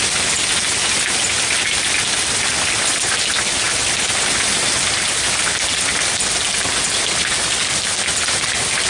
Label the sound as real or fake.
real